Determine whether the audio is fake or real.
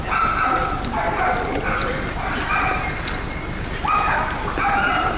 real